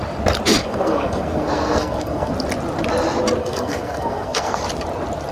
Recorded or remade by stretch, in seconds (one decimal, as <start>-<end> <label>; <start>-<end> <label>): 0.0-0.6 recorded; 0.6-2.3 remade; 2.3-3.4 recorded; 3.4-4.6 remade; 4.6-5.3 recorded